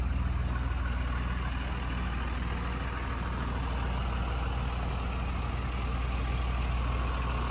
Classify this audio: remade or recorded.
recorded